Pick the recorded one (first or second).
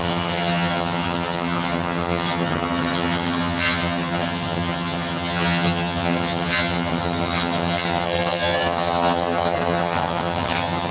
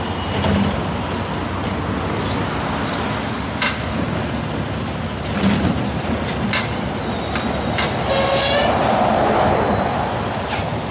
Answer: second